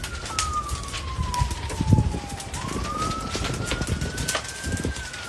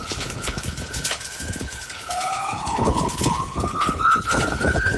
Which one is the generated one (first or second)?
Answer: second